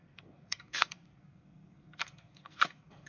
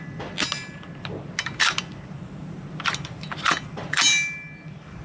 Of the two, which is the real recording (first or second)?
second